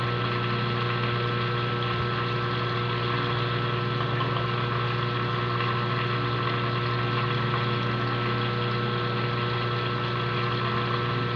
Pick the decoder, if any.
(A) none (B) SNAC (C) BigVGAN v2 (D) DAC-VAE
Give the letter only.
A